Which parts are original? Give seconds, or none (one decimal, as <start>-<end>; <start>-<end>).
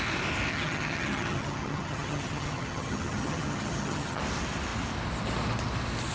0.0-0.5; 4.2-6.1